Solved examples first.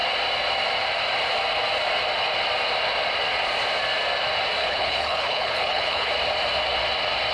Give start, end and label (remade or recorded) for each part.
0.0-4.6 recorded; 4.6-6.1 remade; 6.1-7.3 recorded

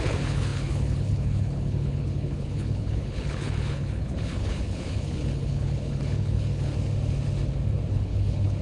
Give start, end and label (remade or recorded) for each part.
0.0-6.7 remade; 6.7-7.9 recorded; 7.9-8.6 remade